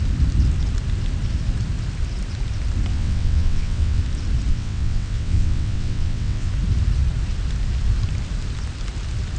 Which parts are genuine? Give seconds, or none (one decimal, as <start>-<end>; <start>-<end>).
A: 0.0-2.9; 4.0-4.5; 6.5-9.4